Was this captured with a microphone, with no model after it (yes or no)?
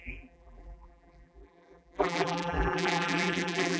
no